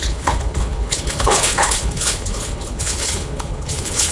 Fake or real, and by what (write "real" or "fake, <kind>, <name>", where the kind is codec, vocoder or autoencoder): fake, codec, HILCodec